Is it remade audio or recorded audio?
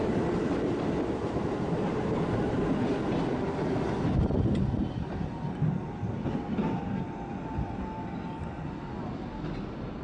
recorded